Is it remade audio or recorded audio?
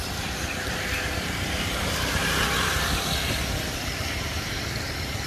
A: recorded